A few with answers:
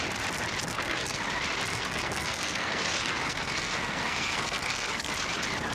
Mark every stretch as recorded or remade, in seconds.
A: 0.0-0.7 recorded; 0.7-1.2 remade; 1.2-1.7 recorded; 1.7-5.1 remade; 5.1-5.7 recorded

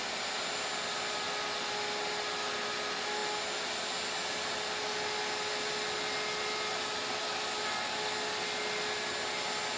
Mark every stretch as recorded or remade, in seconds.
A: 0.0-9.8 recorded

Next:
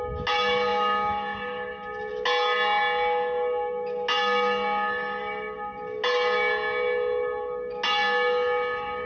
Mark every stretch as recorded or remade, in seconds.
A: 0.0-9.1 recorded